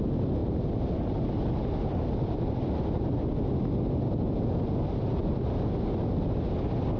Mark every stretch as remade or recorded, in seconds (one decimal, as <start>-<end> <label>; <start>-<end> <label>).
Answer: 0.0-7.0 recorded